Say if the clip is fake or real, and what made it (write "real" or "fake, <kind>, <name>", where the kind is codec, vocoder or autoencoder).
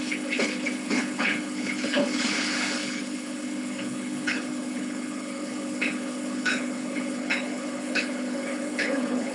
fake, codec, HILCodec